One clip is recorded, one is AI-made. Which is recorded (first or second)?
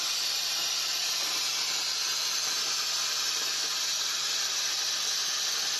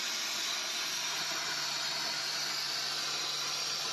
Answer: second